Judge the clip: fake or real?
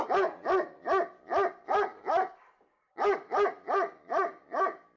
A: real